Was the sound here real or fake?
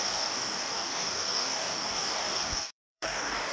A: fake